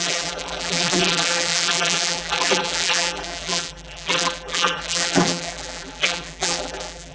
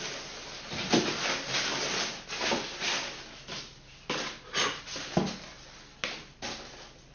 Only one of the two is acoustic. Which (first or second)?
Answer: second